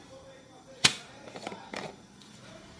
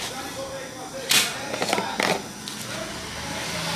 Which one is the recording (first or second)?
second